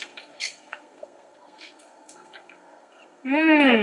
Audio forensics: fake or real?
fake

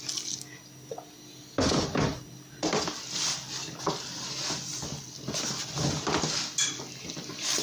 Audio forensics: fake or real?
real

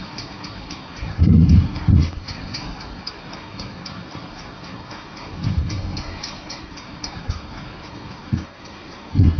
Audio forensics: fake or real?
fake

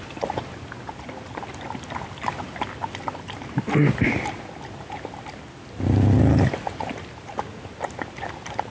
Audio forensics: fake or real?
real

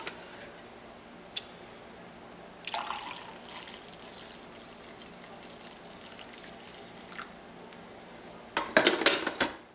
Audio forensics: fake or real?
real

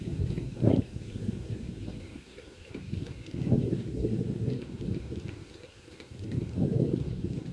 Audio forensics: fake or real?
fake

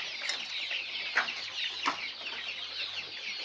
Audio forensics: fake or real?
real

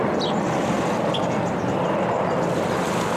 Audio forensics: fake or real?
real